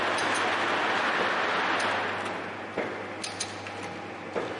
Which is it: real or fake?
real